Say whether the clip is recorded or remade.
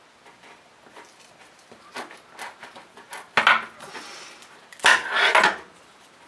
recorded